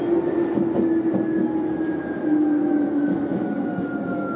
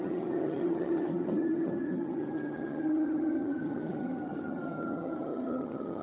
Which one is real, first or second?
first